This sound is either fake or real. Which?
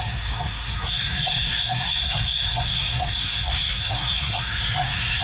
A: fake